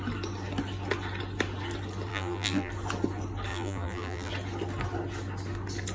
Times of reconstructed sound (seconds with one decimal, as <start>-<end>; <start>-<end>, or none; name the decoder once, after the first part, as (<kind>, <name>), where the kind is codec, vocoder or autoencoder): 2.1-2.7 (vocoder, BigVGAN v2); 3.5-4.3